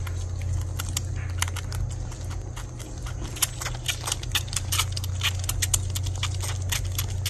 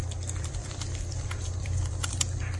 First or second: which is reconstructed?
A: second